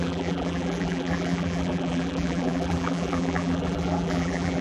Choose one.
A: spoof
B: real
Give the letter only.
A